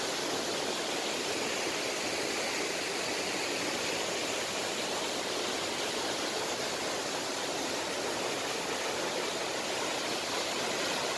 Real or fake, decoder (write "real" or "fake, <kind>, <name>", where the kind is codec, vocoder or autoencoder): real